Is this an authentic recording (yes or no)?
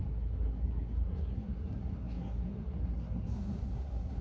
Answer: no